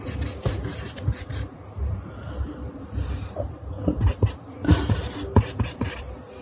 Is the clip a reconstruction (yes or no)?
no